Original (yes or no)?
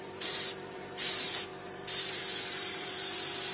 no